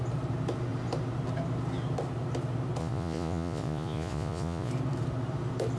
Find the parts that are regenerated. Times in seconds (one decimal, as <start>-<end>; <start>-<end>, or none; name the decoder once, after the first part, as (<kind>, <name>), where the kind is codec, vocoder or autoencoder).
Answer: 2.8-4.7 (vocoder, Vocos)